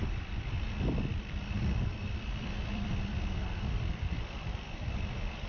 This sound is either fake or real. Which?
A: fake